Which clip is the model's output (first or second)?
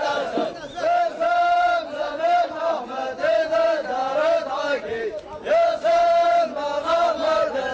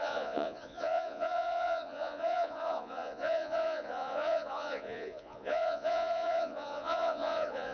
second